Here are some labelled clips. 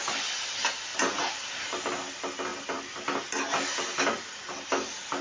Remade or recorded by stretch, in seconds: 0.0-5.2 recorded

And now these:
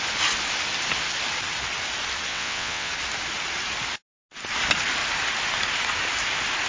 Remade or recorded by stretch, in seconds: 0.0-2.3 recorded; 2.3-2.9 remade; 2.9-6.7 recorded

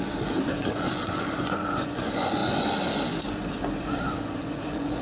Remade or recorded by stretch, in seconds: 0.0-5.0 remade

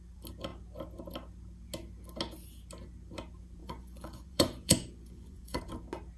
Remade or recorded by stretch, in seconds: 0.0-3.6 recorded; 3.6-5.6 remade; 5.6-6.2 recorded

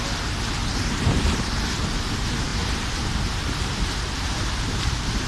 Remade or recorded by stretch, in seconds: 0.0-0.6 recorded; 0.6-1.2 remade; 1.2-2.5 recorded; 2.5-5.3 remade

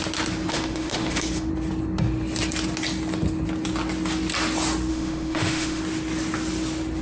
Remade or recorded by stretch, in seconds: 0.0-0.5 recorded; 0.5-1.5 remade; 1.5-4.9 recorded; 4.9-5.8 remade; 5.8-7.0 recorded